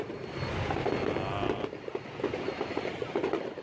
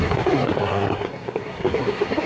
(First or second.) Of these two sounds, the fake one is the second